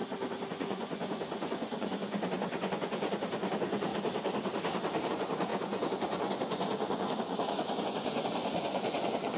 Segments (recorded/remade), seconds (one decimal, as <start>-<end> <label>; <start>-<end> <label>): 0.0-0.5 recorded; 0.5-3.9 remade; 3.9-5.1 recorded; 5.1-9.4 remade